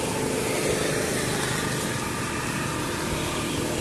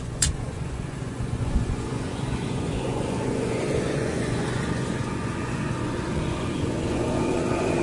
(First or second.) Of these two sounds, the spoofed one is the second